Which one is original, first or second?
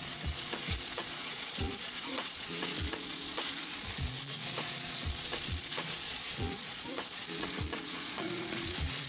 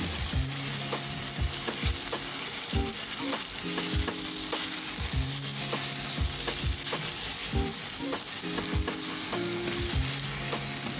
second